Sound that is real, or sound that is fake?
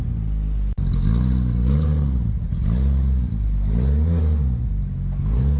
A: real